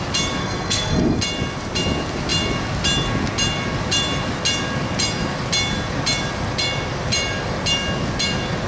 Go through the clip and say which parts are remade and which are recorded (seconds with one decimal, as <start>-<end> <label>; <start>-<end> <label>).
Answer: 0.0-0.4 recorded; 0.4-1.2 remade; 1.2-8.7 recorded